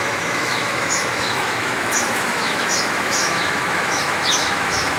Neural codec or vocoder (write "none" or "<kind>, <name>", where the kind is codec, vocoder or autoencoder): autoencoder, DAC-VAE